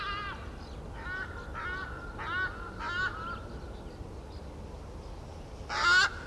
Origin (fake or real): real